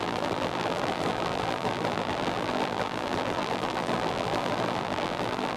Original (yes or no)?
no